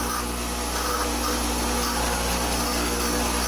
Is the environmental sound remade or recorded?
recorded